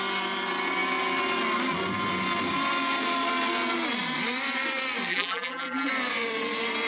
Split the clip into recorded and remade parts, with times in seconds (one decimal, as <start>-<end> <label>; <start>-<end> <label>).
0.0-5.1 recorded; 5.1-5.9 remade; 5.9-6.9 recorded